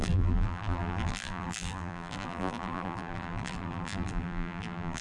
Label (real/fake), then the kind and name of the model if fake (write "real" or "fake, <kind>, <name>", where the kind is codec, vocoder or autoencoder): fake, vocoder, BigVGAN v2